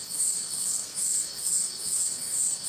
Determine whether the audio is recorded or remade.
remade